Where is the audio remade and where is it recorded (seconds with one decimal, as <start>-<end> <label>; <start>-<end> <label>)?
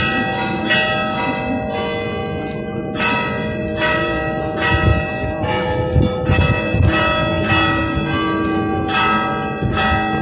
0.0-10.2 recorded